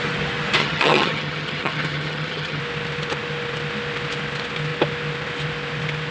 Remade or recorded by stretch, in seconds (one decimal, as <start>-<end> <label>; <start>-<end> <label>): 0.0-0.6 recorded; 0.6-2.6 remade; 2.6-6.1 recorded